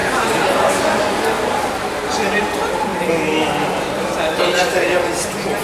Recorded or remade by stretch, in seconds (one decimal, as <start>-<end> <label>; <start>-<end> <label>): 0.0-5.6 recorded